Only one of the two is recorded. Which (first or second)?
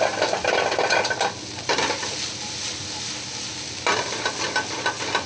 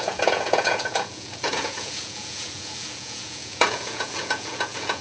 first